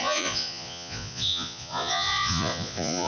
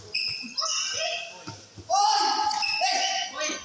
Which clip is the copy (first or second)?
first